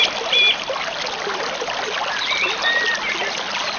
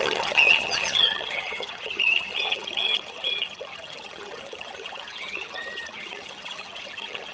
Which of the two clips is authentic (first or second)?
first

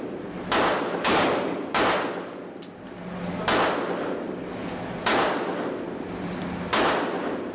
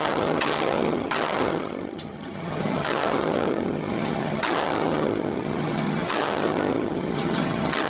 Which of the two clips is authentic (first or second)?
first